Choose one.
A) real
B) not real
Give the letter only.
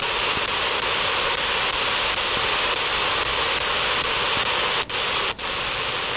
A